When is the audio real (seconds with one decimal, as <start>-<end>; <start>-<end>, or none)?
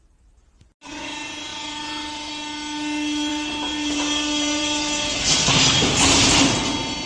0.0-1.5; 2.3-3.3; 6.3-7.1